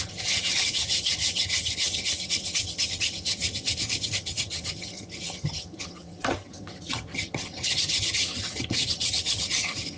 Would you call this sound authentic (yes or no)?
no